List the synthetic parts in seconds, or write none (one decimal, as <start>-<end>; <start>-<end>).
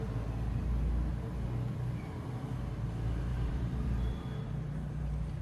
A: 3.3-5.4